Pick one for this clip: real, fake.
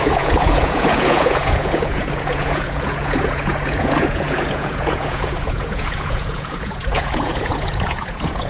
fake